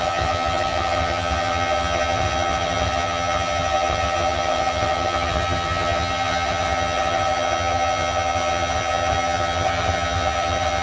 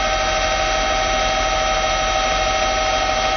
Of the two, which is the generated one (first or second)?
first